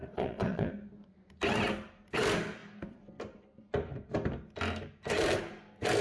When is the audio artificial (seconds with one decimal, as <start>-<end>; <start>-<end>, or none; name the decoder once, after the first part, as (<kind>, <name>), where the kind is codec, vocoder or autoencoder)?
0.0-0.7 (vocoder, WaveNeXt)